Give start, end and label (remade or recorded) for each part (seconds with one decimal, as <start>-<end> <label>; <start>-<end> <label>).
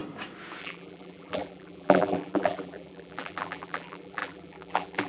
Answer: 0.0-0.6 recorded; 0.6-5.1 remade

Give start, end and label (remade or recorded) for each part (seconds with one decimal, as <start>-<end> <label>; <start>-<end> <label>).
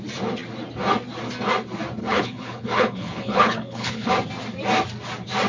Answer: 0.0-2.0 recorded; 2.0-4.1 remade; 4.1-5.5 recorded